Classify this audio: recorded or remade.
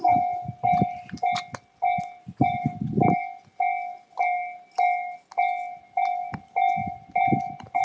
recorded